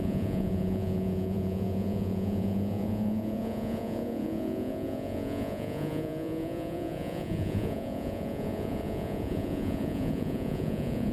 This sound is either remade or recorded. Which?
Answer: remade